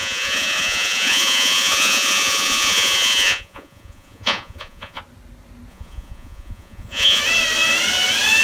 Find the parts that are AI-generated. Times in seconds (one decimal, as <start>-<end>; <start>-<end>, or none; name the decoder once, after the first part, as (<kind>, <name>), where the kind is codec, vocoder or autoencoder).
0.0-5.0 (vocoder, Vocos); 5.7-7.2